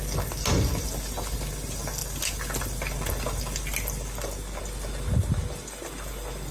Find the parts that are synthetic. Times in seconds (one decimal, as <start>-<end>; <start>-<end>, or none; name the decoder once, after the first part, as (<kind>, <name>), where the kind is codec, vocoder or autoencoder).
none